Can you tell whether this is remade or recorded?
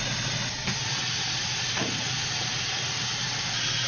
recorded